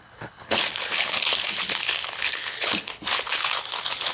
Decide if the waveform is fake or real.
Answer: fake